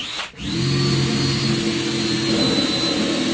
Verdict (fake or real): real